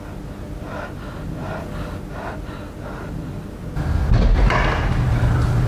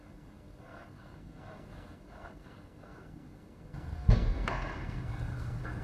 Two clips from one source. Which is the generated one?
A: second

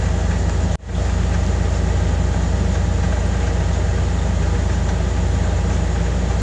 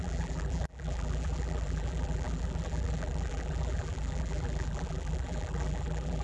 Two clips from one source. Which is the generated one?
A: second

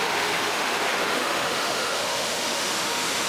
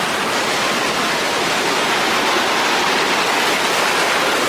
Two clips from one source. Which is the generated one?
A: first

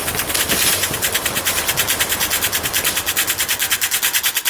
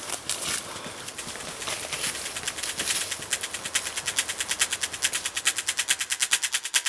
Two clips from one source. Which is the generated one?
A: first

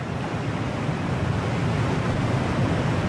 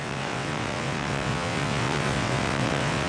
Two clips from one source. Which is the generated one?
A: second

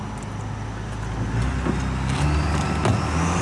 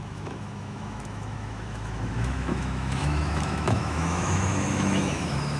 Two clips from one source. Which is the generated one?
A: second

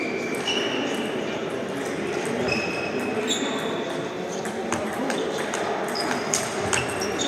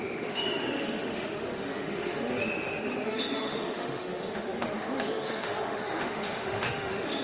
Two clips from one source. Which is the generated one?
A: second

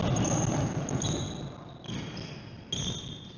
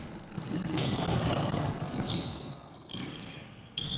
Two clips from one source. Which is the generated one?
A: second